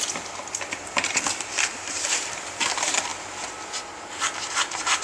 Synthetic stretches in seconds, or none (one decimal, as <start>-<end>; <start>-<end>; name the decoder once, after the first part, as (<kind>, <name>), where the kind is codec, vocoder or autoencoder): 0.0-3.1 (vocoder, BigVGAN v2); 3.8-5.0